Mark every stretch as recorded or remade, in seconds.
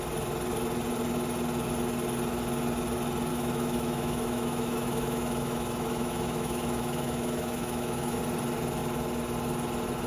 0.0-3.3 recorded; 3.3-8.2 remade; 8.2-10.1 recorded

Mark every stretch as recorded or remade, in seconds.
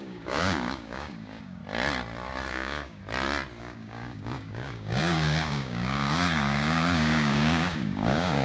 0.0-1.6 remade; 1.6-2.5 recorded; 2.5-3.0 remade; 3.0-3.6 recorded; 3.6-8.4 remade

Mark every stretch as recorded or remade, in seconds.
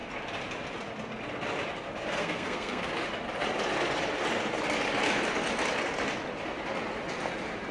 0.0-2.2 recorded; 2.2-2.9 remade; 2.9-7.7 recorded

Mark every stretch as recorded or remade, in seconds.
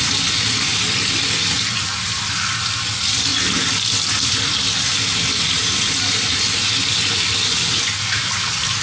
0.0-8.8 recorded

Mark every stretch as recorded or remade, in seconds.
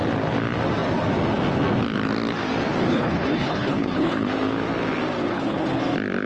0.0-2.9 recorded; 2.9-4.3 remade; 4.3-5.3 recorded; 5.3-5.8 remade; 5.8-6.3 recorded